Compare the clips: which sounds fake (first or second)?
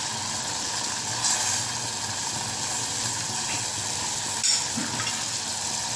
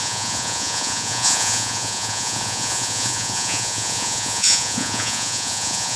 second